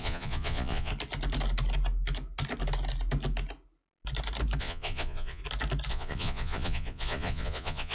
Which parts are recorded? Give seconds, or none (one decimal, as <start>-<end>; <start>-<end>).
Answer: 0.9-4.6; 5.4-5.9